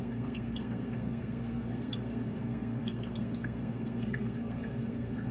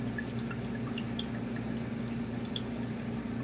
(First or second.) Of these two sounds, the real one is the second